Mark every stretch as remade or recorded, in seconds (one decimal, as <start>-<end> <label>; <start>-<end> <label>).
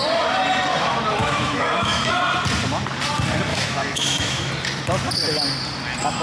0.0-1.2 recorded; 1.2-2.1 remade; 2.1-3.5 recorded; 3.5-4.5 remade; 4.5-6.2 recorded